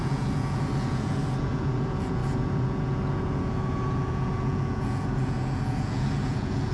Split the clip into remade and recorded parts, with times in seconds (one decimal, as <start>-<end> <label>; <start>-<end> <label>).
0.0-6.7 remade